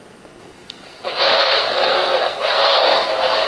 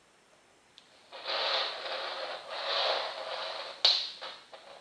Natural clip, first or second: second